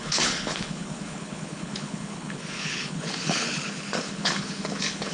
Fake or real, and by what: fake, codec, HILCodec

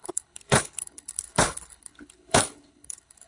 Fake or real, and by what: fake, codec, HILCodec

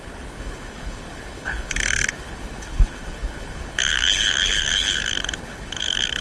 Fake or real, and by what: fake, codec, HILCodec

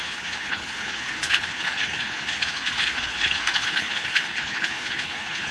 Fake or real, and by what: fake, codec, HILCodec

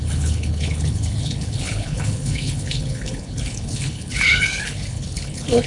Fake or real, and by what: fake, codec, HILCodec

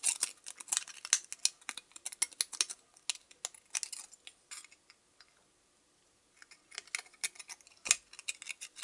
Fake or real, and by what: real